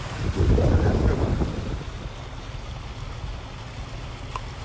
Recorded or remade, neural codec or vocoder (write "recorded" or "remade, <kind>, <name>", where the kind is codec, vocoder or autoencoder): recorded